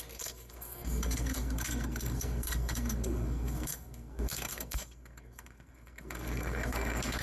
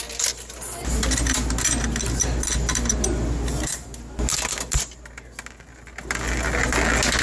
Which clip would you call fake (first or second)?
first